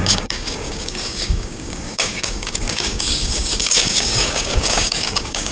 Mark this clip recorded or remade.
remade